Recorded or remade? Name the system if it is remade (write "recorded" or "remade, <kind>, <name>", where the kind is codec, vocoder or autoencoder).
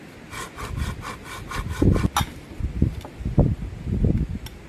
recorded